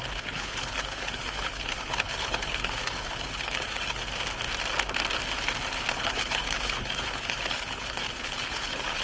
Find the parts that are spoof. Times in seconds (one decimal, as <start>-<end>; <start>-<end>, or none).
0.0-4.0; 5.9-9.0